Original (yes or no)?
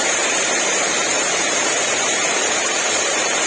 no